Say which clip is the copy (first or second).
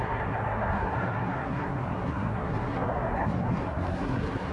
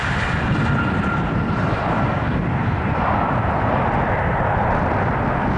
first